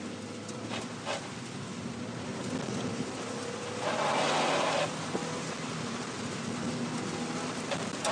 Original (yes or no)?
yes